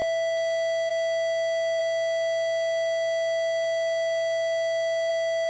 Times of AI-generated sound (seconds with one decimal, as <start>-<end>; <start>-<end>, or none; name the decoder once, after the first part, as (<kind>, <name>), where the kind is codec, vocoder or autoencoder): none